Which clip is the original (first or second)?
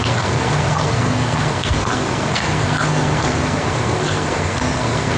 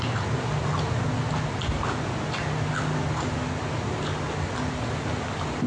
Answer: second